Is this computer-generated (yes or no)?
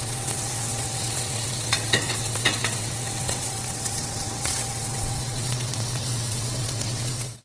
yes